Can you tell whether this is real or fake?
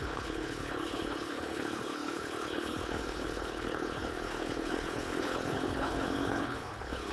fake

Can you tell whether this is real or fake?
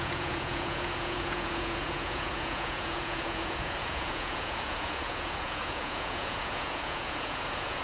fake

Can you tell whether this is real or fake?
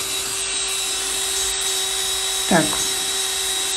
real